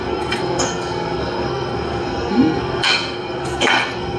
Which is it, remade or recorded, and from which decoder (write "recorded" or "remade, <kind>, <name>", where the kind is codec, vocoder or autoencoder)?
remade, codec, SNAC